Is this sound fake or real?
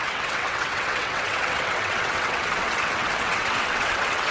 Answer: fake